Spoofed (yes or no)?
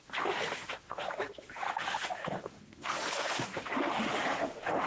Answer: yes